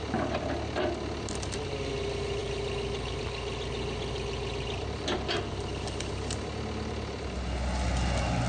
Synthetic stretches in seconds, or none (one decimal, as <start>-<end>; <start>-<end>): none